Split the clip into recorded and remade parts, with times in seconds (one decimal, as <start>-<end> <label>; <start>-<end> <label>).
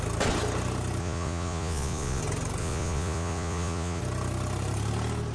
0.0-1.0 recorded; 1.0-2.2 remade; 2.2-2.6 recorded; 2.6-4.0 remade; 4.0-5.3 recorded